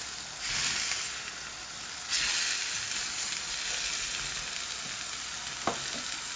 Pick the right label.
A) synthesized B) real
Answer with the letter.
B